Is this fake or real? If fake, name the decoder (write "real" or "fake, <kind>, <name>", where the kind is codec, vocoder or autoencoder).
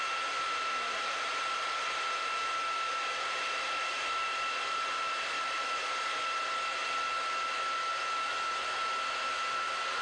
real